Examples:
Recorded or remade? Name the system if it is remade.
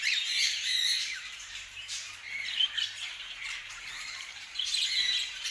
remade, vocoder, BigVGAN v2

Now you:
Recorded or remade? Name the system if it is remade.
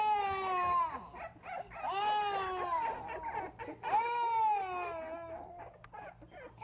recorded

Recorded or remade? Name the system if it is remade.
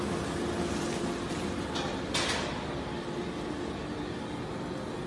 recorded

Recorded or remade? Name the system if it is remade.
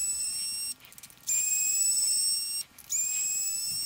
recorded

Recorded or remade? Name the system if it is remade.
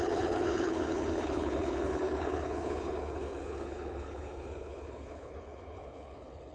remade, codec, HILCodec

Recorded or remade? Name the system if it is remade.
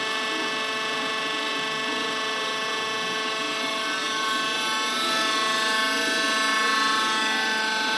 recorded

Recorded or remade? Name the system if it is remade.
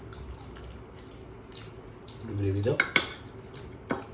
recorded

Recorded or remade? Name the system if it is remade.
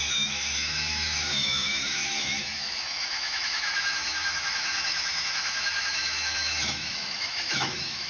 remade, autoencoder, DAC-VAE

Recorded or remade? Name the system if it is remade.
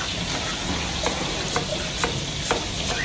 recorded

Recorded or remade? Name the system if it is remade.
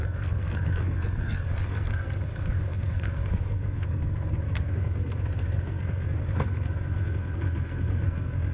remade, codec, SNAC